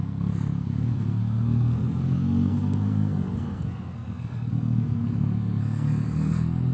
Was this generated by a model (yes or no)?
yes